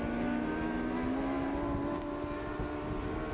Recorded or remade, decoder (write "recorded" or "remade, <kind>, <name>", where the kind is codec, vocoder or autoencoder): recorded